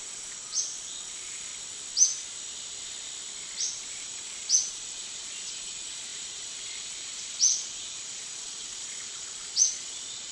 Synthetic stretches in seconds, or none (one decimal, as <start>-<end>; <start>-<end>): 0.0-1.5; 3.9-10.3